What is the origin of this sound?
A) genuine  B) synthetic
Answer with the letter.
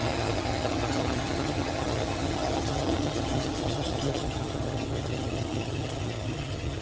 B